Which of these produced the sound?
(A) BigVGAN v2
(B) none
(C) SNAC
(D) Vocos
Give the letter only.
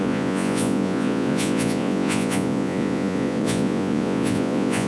D